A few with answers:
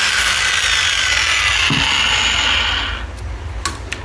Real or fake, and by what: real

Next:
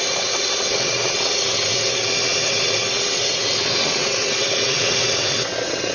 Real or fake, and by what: fake, vocoder, WaveNeXt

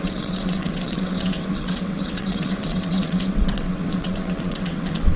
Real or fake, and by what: fake, vocoder, WaveNeXt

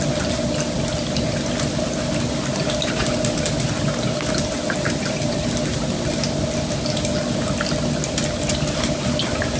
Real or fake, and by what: real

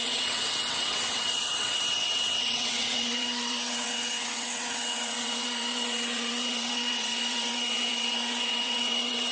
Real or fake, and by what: fake, vocoder, WaveNeXt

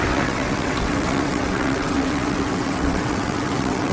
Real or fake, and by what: fake, vocoder, WaveNeXt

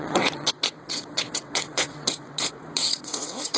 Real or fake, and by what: fake, vocoder, WaveNeXt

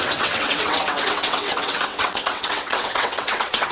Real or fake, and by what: fake, vocoder, WaveNeXt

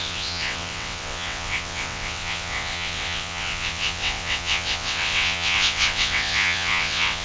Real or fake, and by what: fake, vocoder, WaveNeXt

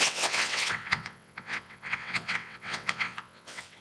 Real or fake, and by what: fake, vocoder, WaveNeXt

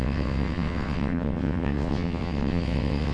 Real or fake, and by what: fake, vocoder, WaveNeXt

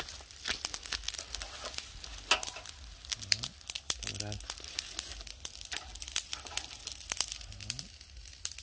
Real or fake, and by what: real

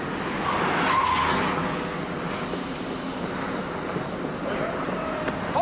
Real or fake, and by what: real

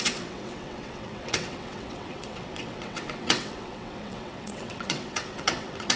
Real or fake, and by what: fake, vocoder, WaveNeXt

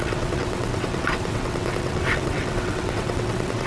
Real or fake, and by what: fake, vocoder, WaveNeXt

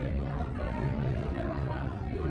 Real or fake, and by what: fake, vocoder, WaveNeXt